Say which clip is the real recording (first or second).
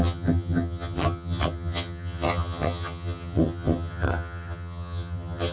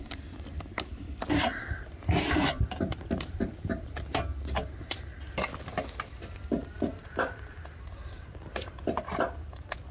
second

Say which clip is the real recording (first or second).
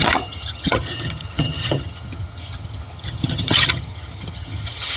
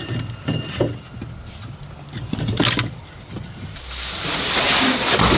second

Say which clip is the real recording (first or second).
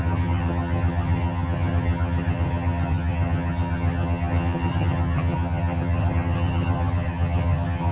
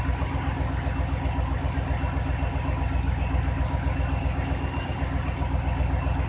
second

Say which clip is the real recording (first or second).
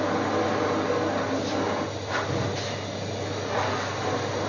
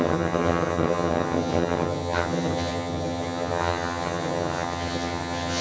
first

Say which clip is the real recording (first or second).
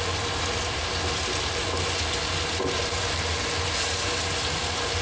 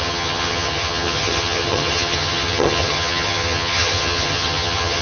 first